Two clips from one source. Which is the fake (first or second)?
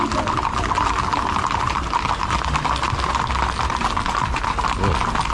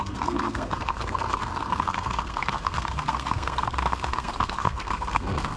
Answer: second